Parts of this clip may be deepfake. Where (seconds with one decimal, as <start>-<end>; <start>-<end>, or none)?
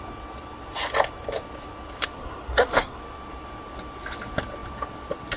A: 2.2-3.0